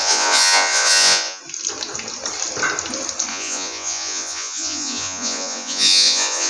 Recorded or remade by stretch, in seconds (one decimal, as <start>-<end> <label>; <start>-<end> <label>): 0.0-1.4 remade; 1.4-3.3 recorded; 3.3-6.5 remade